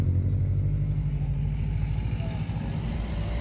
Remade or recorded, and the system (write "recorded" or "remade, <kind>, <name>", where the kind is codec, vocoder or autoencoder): recorded